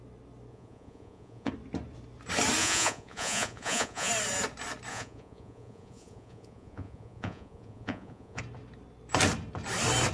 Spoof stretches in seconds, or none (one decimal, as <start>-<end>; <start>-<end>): 0.5-1.5; 2.6-4.1; 4.9-8.4